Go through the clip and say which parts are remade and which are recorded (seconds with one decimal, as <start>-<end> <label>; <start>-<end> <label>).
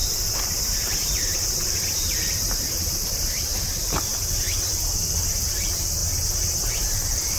0.0-0.6 recorded; 0.6-6.0 remade; 6.0-6.7 recorded; 6.7-7.4 remade